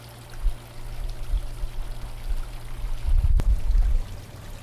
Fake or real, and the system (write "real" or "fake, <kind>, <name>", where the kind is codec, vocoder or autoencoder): real